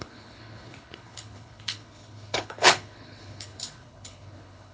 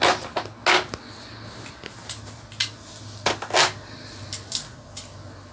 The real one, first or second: second